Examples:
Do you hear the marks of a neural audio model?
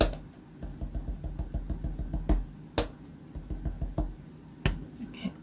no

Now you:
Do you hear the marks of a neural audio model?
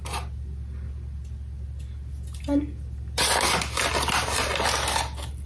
no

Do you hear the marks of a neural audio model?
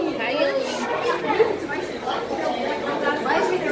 no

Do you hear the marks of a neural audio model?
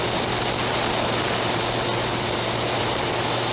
no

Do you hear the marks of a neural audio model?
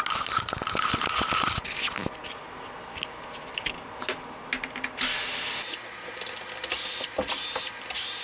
no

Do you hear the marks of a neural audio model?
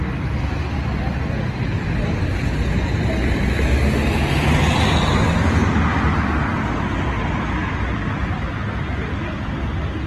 no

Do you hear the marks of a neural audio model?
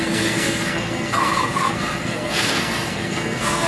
yes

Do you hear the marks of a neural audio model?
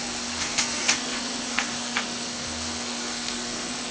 yes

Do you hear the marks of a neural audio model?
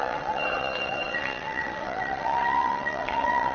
yes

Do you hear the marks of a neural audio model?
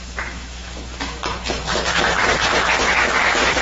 yes